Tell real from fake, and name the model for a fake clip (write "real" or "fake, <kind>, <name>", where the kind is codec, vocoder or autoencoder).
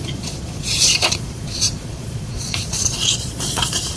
fake, vocoder, Vocos